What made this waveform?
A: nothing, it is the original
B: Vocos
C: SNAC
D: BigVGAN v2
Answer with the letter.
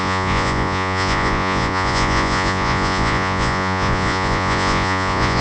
B